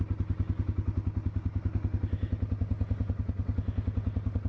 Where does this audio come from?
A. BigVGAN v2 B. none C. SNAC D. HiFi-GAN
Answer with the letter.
B